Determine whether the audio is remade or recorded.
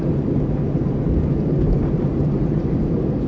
remade